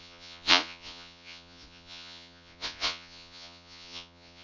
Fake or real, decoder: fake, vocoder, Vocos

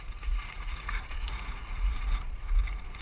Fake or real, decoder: fake, vocoder, Vocos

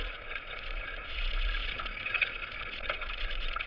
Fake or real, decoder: fake, vocoder, Vocos